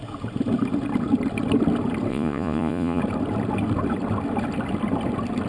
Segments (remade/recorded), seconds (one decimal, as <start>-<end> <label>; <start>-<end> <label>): 0.0-2.1 recorded; 2.1-3.0 remade; 3.0-5.5 recorded